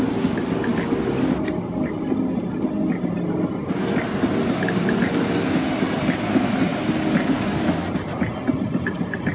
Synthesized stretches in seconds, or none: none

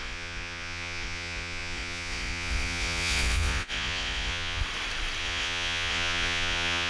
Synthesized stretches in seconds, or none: 0.0-4.6 (vocoder, Vocos); 5.2-6.9

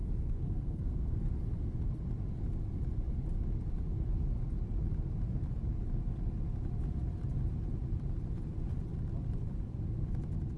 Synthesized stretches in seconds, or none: 0.0-1.2 (codec, SNAC)

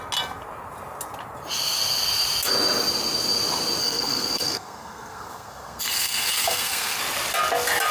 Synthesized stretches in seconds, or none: 3.8-7.0 (codec, SNAC)

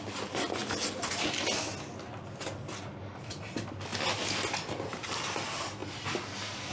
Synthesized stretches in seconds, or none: none

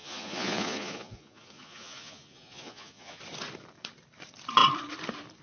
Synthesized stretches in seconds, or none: 0.0-3.2 (vocoder, Vocos)

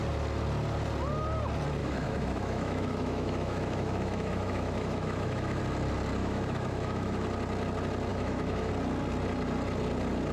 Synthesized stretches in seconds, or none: 1.8-5.6 (autoencoder, DAC-VAE); 6.2-7.3; 8.1-8.7